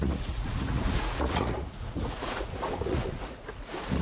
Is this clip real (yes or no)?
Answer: no